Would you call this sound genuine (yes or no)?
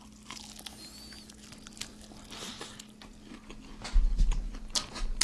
yes